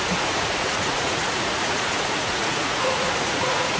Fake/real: fake